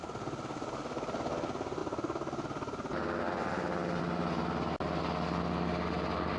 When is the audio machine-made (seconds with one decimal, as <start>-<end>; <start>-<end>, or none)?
none